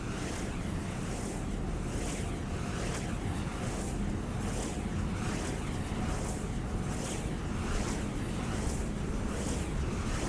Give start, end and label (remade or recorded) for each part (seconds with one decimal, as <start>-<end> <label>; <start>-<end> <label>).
0.0-10.3 recorded